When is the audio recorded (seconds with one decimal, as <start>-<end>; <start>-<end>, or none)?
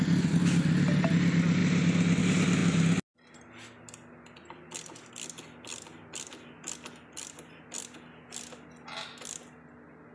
0.0-10.1